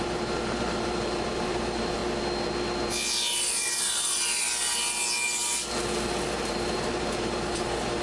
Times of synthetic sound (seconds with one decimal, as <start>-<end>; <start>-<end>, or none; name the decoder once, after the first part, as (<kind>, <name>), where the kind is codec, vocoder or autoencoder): 0.0-2.0 (vocoder, BigVGAN v2); 6.5-8.0